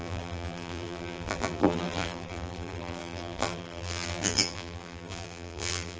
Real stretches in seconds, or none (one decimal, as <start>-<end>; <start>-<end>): none